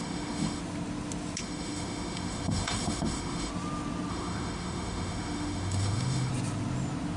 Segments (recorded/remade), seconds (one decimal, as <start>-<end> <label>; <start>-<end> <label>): 0.0-0.6 remade; 0.6-1.4 recorded; 1.4-3.5 remade; 3.5-4.1 recorded; 4.1-6.3 remade; 6.3-7.2 recorded